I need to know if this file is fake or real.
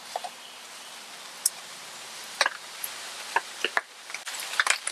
fake